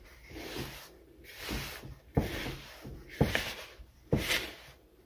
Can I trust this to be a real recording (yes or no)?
yes